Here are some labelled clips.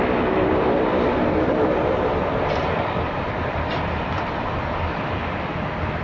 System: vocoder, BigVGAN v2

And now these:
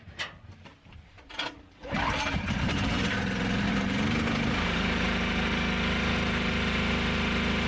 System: vocoder, BigVGAN v2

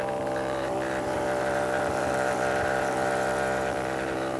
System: vocoder, BigVGAN v2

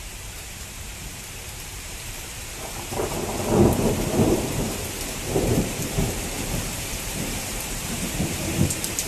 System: vocoder, BigVGAN v2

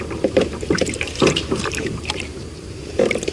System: vocoder, BigVGAN v2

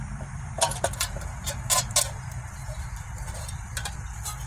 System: vocoder, BigVGAN v2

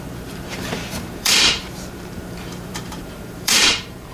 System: vocoder, BigVGAN v2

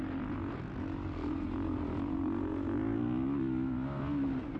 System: none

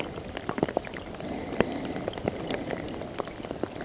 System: vocoder, BigVGAN v2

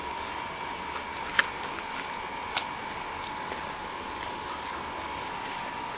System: none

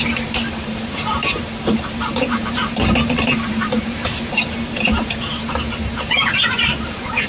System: vocoder, BigVGAN v2